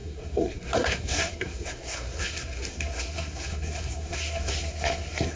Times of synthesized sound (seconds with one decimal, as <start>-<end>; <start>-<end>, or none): 0.0-5.4